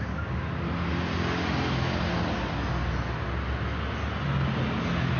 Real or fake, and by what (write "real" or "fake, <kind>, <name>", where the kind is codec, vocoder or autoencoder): real